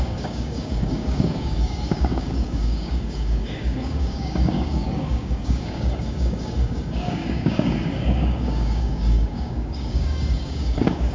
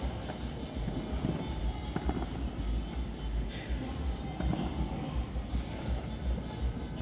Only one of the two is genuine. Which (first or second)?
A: second